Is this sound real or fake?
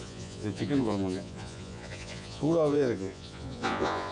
fake